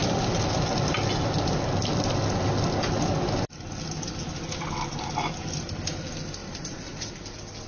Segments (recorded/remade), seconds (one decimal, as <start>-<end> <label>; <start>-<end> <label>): 0.0-6.4 recorded; 6.4-7.1 remade; 7.1-7.7 recorded